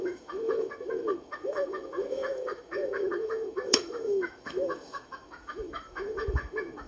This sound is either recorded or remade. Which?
remade